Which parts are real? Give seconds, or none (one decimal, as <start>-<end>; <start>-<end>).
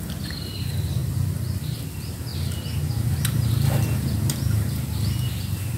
0.0-5.8